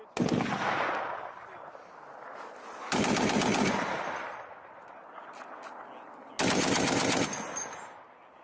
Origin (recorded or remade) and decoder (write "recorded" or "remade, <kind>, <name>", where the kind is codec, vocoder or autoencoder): recorded